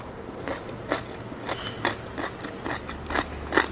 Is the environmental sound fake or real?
real